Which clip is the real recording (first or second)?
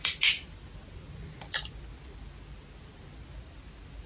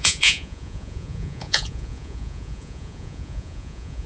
first